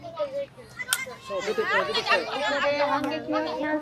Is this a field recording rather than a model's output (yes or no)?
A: yes